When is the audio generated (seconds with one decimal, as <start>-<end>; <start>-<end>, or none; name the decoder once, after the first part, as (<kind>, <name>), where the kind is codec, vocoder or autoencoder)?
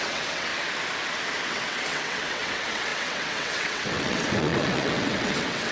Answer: 0.0-0.5 (vocoder, WaveNeXt); 1.4-5.7